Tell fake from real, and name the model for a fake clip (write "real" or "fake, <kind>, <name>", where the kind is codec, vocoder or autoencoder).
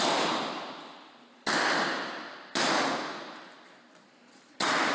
real